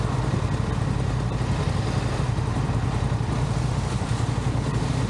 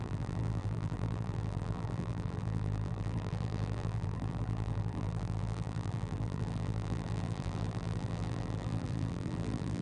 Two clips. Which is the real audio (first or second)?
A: first